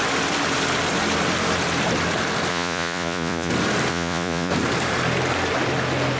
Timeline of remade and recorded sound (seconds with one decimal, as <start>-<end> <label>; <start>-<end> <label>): 0.0-2.5 recorded; 2.5-3.5 remade; 3.5-3.9 recorded; 3.9-4.5 remade; 4.5-6.2 recorded